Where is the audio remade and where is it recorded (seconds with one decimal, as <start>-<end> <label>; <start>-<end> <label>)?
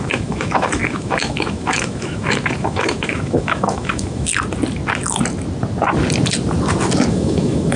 0.0-4.3 remade; 4.3-7.1 recorded; 7.1-7.8 remade